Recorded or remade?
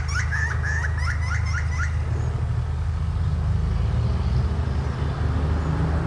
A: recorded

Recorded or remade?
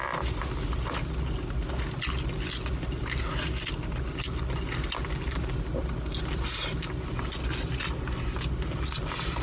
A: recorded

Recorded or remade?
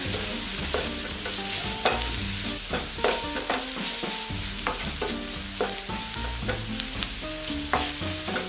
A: recorded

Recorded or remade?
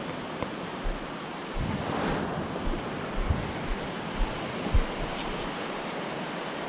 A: recorded